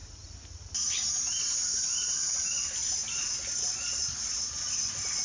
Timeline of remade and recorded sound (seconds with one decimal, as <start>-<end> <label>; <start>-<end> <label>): 0.0-5.2 recorded